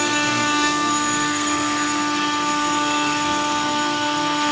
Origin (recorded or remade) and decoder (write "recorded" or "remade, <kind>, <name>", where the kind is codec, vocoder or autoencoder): remade, codec, SNAC